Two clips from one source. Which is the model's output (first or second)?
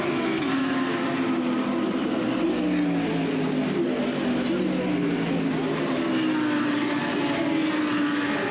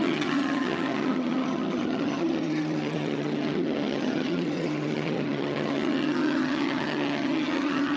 second